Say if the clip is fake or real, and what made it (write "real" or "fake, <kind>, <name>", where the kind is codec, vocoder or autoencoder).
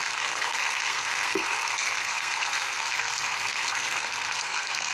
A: fake, codec, SNAC